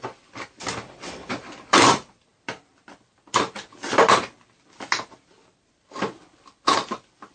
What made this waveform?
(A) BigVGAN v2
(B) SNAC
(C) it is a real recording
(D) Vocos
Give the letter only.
A